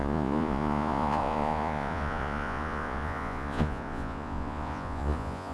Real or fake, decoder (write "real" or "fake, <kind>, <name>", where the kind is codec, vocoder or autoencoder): fake, vocoder, Vocos